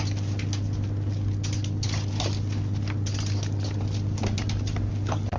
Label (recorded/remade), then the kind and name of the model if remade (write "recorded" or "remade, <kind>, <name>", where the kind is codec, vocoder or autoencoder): recorded